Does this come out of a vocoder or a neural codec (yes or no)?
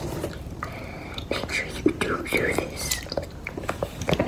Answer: yes